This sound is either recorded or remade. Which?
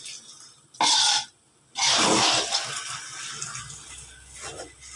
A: recorded